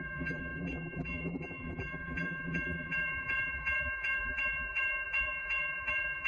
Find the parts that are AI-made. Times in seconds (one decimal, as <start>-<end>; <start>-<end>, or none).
0.0-6.3